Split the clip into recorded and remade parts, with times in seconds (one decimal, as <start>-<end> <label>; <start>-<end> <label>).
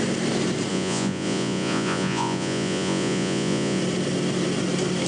0.0-0.7 recorded; 0.7-3.8 remade; 3.8-5.1 recorded